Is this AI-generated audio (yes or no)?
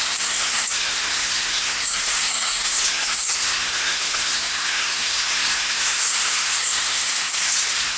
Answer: yes